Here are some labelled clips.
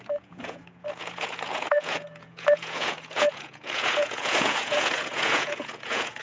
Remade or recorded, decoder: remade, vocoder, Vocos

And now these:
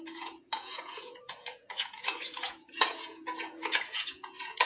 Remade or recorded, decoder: remade, vocoder, Vocos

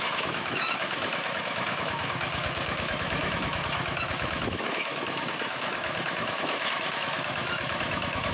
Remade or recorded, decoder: remade, autoencoder, DAC-VAE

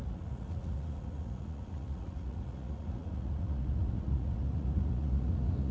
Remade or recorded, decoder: remade, vocoder, Vocos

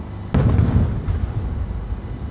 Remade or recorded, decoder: recorded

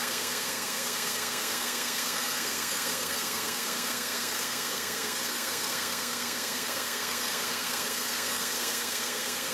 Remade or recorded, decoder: remade, codec, SNAC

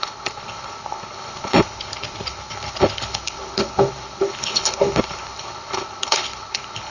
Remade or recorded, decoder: remade, codec, HILCodec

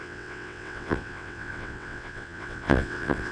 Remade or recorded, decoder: remade, vocoder, WaveNeXt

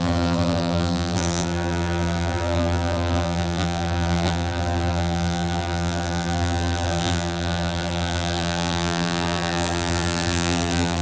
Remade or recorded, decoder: remade, vocoder, BigVGAN v2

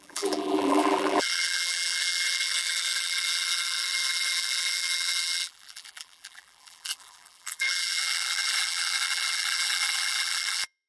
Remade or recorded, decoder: remade, vocoder, BigVGAN v2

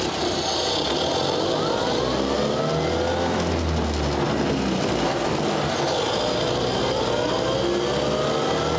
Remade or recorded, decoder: recorded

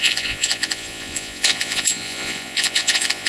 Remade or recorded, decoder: remade, vocoder, Vocos